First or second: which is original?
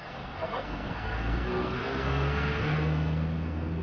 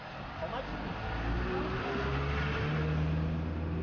second